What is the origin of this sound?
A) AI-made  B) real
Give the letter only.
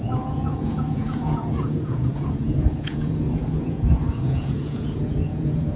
A